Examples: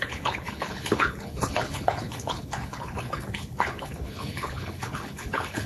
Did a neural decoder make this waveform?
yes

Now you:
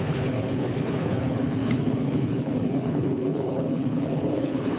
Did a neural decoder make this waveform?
yes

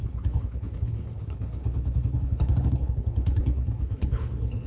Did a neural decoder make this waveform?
yes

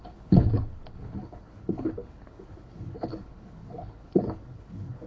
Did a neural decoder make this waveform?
yes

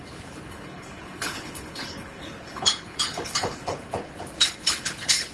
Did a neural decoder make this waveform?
yes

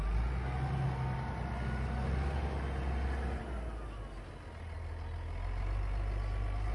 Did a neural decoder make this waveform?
no